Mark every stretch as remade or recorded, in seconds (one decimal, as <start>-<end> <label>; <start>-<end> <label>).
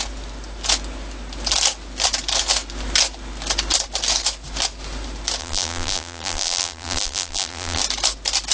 0.0-5.4 recorded; 5.4-7.8 remade; 7.8-8.5 recorded